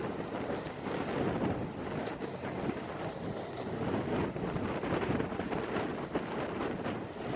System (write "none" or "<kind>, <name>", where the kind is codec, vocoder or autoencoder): none